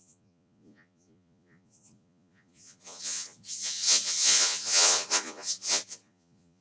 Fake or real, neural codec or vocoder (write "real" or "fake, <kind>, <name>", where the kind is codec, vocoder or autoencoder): fake, vocoder, Vocos